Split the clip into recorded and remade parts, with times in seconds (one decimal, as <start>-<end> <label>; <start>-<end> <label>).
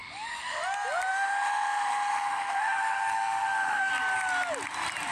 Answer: 0.0-0.6 remade; 0.6-1.1 recorded; 1.1-3.9 remade; 3.9-5.1 recorded